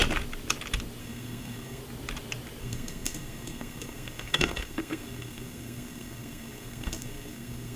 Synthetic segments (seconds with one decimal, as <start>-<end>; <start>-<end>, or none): 1.0-1.8; 2.6-7.8